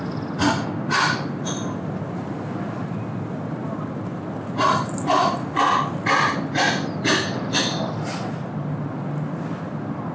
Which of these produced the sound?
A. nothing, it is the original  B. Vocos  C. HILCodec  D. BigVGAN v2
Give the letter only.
A